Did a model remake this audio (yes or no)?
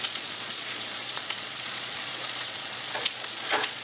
yes